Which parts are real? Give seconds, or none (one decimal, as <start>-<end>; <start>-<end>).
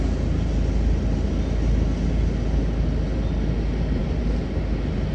0.0-5.1